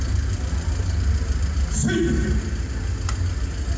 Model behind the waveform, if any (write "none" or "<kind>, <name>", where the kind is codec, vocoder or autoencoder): none